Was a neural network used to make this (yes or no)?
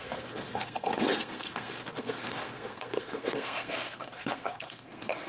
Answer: yes